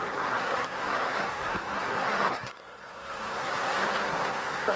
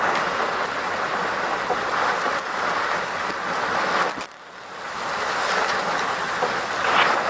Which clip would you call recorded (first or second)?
second